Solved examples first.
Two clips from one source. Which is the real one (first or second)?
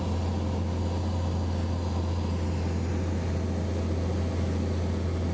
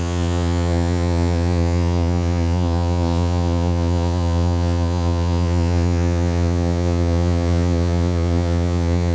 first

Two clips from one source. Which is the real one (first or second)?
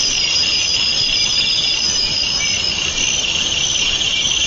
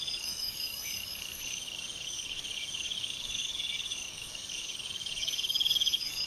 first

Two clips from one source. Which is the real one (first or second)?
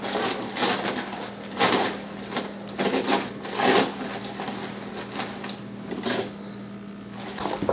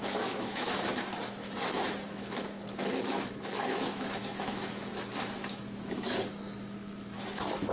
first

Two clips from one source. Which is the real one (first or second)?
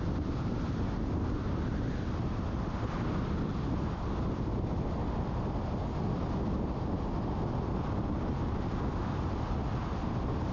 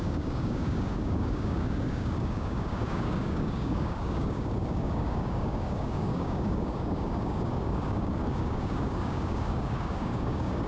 first